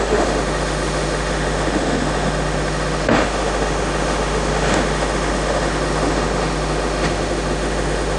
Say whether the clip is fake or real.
fake